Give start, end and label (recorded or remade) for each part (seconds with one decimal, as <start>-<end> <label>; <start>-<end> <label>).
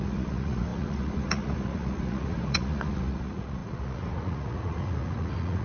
0.0-5.6 remade